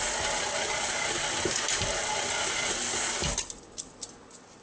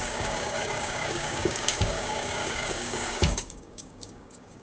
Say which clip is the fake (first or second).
second